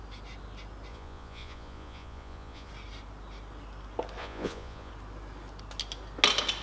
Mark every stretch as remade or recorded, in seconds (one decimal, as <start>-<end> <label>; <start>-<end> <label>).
0.0-0.9 recorded; 0.9-2.7 remade; 2.7-4.2 recorded; 4.2-4.9 remade; 4.9-6.6 recorded